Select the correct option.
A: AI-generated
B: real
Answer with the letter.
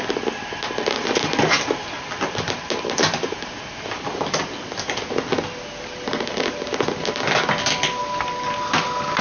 B